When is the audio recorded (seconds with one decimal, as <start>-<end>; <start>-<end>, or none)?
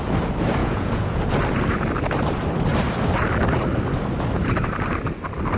0.0-0.6; 1.2-5.6